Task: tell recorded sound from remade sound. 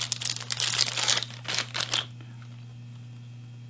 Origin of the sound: recorded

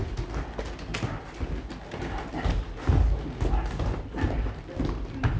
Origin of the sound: recorded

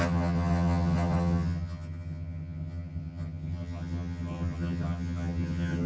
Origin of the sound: remade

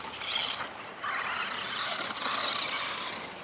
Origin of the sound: recorded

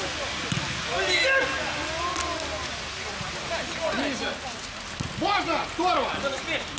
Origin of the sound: recorded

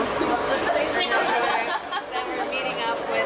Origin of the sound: recorded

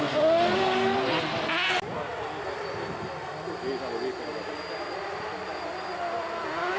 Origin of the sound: recorded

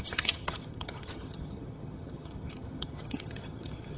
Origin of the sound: remade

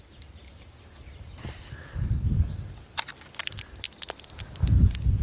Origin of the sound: recorded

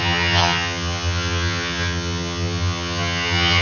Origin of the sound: remade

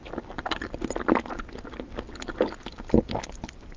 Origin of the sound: recorded